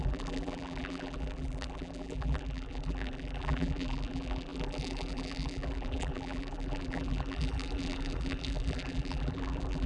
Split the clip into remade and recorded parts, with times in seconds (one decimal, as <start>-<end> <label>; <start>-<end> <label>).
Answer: 0.0-9.9 remade